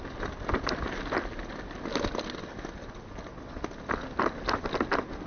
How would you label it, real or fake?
real